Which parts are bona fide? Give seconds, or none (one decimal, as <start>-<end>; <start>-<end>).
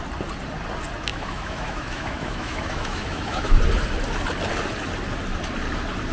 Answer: 0.0-1.1; 3.6-6.1